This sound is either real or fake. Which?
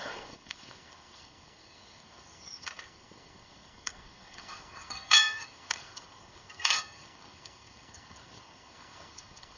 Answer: fake